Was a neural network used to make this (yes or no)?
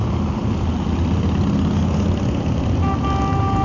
no